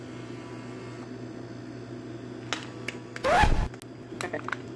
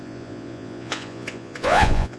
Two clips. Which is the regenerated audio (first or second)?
second